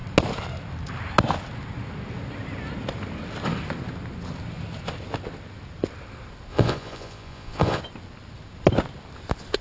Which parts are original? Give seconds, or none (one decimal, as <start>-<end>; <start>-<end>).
0.0-6.5; 7.8-9.6